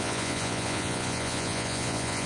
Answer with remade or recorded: remade